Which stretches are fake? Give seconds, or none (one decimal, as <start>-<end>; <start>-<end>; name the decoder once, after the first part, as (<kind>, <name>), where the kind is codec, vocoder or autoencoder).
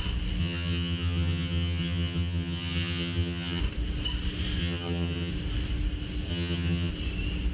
0.4-3.6 (vocoder, HiFi-GAN); 4.6-5.3; 6.3-6.9